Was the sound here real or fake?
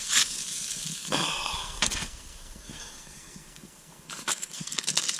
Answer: fake